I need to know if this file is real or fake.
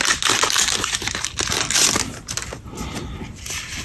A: real